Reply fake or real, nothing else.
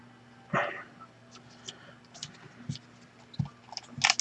real